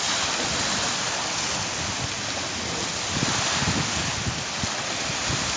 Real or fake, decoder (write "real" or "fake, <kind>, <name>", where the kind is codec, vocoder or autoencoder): real